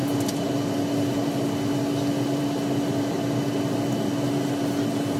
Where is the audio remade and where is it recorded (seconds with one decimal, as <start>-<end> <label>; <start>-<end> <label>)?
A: 0.0-5.2 recorded